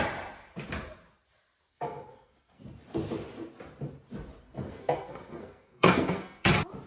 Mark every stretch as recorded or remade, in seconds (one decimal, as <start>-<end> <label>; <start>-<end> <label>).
0.0-1.7 recorded; 1.7-2.6 remade; 2.6-4.4 recorded; 4.4-6.5 remade; 6.5-6.9 recorded